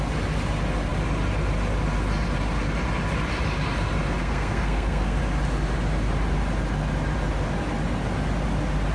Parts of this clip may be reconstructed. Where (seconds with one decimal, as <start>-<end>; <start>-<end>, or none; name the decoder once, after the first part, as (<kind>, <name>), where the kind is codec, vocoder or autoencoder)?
4.2-5.2 (codec, SNAC)